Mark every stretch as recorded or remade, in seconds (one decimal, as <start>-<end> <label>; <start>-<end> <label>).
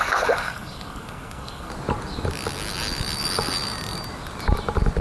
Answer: 0.0-1.7 remade; 1.7-5.0 recorded